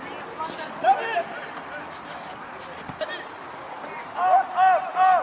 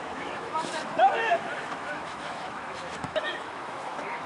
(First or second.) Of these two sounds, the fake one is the second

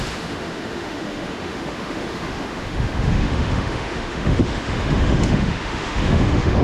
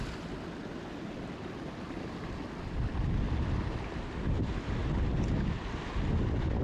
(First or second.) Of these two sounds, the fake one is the first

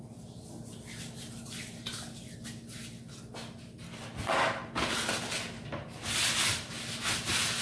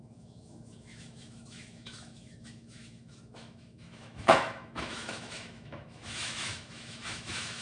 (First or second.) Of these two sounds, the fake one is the second